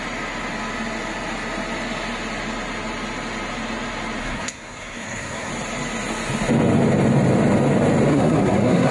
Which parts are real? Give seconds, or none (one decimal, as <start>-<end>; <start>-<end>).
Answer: 0.0-4.2; 5.5-8.1

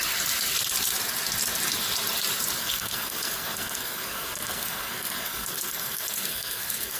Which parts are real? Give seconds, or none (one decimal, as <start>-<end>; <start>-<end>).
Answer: 0.0-2.6

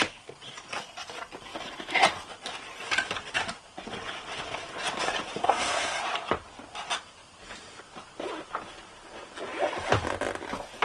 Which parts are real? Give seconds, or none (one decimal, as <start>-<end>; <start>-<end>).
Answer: 0.0-5.4; 6.0-10.8

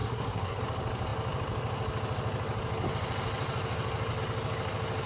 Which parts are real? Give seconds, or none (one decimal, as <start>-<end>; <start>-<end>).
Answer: 0.6-5.1

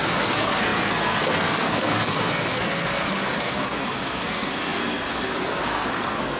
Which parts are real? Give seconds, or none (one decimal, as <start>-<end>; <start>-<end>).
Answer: none